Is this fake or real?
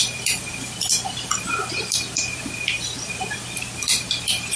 fake